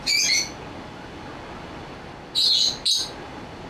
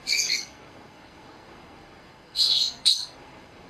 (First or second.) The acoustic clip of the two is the first